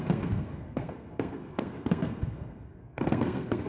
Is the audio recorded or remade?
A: remade